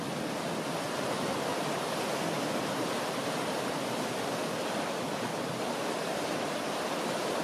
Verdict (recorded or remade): remade